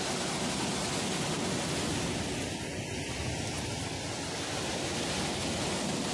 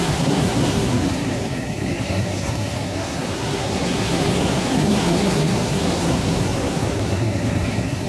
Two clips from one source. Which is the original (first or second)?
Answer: first